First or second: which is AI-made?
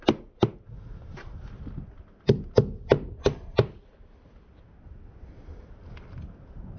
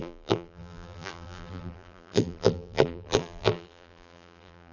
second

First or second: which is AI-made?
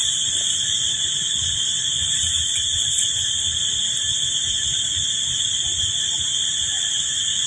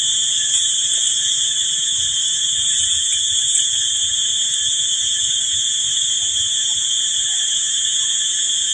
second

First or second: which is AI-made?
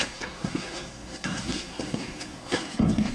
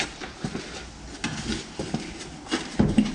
first